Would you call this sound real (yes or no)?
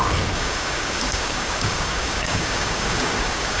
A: no